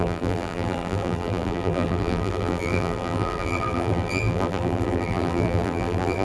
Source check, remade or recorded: remade